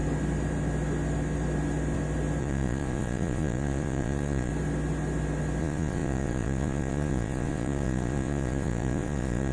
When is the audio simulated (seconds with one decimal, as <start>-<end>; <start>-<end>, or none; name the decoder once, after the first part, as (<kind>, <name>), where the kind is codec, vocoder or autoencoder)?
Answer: 2.4-4.5 (vocoder, Vocos); 5.6-9.5